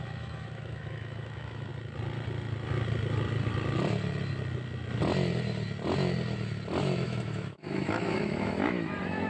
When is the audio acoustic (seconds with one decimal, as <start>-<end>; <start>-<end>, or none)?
1.7-6.8